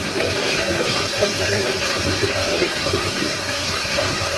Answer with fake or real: fake